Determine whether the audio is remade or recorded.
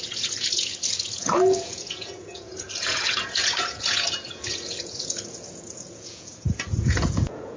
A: remade